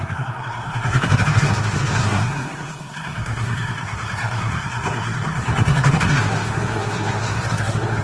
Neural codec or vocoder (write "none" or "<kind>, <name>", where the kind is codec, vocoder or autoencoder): codec, SNAC